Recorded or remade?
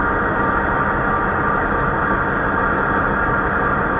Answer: recorded